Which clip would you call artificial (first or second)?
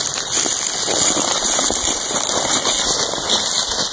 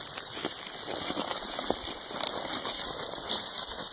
second